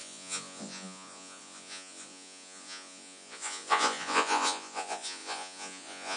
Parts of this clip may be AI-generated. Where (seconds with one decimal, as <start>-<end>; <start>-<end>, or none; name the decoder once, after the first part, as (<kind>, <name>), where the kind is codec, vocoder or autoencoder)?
0.0-6.2 (vocoder, Vocos)